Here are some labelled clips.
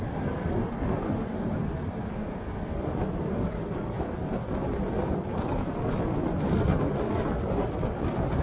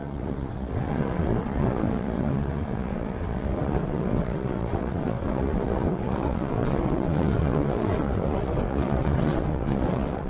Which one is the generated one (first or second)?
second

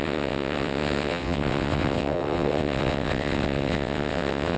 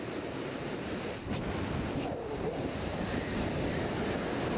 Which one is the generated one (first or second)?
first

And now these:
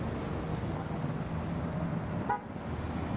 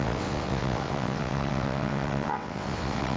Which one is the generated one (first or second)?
second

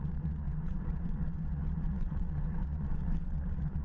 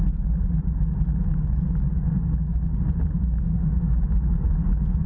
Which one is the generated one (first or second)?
first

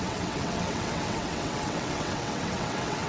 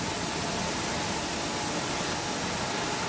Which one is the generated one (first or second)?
first